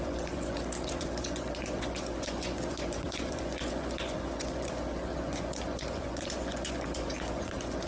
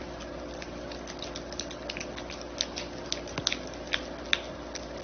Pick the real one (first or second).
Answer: second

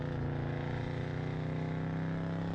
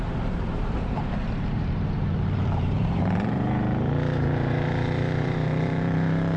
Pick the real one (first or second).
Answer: first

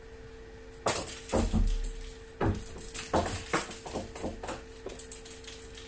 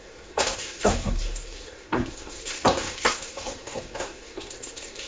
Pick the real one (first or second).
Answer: first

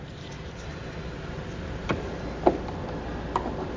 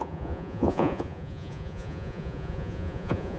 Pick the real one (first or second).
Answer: first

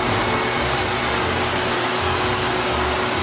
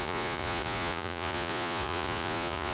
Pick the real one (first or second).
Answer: first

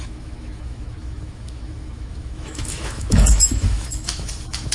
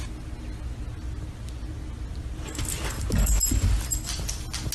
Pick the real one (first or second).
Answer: second